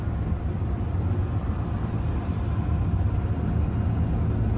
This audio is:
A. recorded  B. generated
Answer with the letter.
A